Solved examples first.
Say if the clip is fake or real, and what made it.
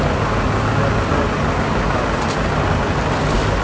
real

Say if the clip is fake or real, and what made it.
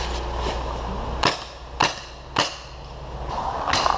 real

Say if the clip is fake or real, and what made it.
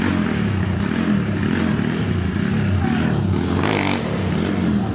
real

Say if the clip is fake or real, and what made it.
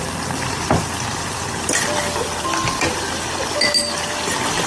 fake, vocoder, BigVGAN v2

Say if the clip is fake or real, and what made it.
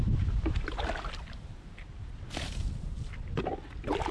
real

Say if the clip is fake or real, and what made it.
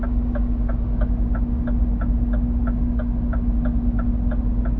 real